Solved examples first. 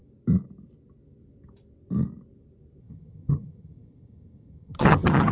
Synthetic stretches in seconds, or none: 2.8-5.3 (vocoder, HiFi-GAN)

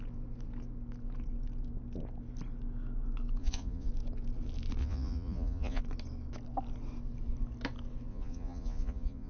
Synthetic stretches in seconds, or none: 3.4-3.9 (vocoder, Vocos); 4.8-5.8; 8.1-9.3

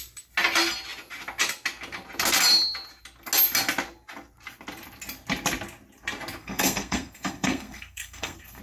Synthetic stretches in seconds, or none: 6.4-8.6 (codec, SNAC)

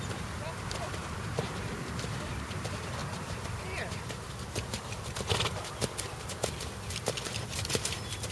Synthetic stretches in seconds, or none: 0.0-3.0 (vocoder, BigVGAN v2)

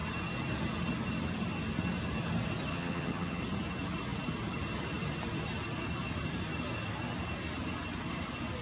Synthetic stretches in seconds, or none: 2.7-3.4 (vocoder, HiFi-GAN)